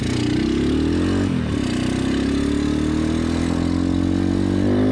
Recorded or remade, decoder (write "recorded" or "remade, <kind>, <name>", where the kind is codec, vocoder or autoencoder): recorded